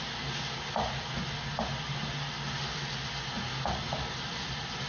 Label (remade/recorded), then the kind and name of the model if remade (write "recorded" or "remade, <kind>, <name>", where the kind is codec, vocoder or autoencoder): recorded